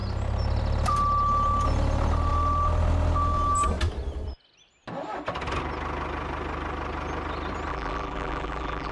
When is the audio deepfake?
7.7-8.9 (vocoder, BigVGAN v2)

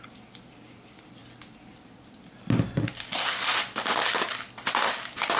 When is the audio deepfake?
none